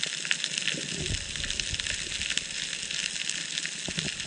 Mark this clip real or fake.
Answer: real